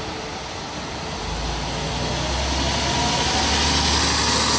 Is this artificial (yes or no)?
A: no